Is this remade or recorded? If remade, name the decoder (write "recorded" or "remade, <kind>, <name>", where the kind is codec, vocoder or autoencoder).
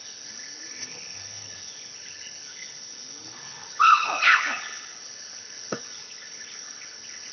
remade, codec, HILCodec